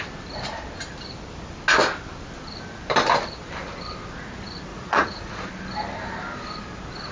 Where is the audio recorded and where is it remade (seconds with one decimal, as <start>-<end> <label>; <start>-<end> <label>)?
0.0-4.7 recorded; 4.7-5.5 remade; 5.5-7.1 recorded